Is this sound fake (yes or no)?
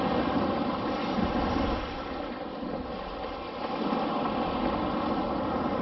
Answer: no